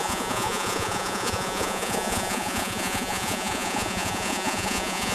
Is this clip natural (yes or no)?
no